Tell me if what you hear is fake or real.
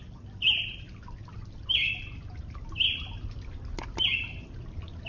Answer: real